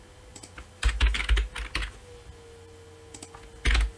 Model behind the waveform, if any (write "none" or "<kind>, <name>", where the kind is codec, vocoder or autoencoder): none